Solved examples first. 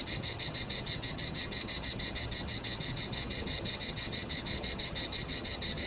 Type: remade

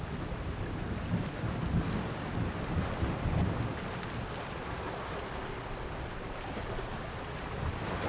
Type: recorded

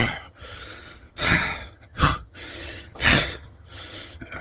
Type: remade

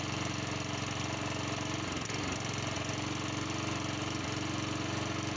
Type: recorded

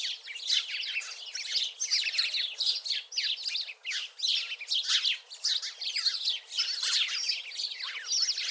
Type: recorded